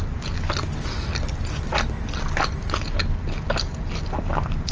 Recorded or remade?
recorded